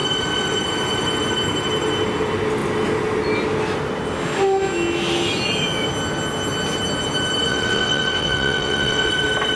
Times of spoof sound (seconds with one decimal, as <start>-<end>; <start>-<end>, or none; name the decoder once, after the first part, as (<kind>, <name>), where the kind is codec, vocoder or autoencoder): 7.5-9.1 (vocoder, WaveNeXt)